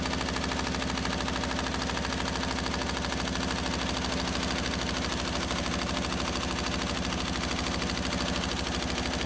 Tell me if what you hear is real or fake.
real